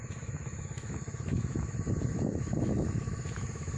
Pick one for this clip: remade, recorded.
remade